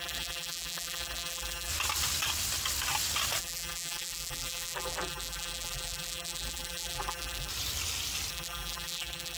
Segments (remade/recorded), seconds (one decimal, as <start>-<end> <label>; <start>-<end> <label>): 0.0-1.7 remade; 1.7-3.4 recorded; 3.4-7.5 remade; 7.5-8.3 recorded; 8.3-9.4 remade